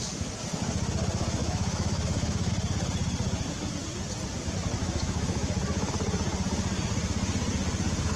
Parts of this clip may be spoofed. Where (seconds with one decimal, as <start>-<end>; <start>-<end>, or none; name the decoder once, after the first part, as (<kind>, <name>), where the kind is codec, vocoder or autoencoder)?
1.4-2.5 (autoencoder, DAC-VAE); 4.8-5.9